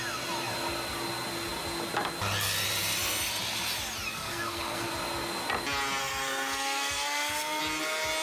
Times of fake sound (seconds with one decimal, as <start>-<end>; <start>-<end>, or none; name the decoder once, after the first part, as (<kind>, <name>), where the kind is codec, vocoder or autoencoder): 4.1-4.9 (codec, SNAC); 6.0-7.6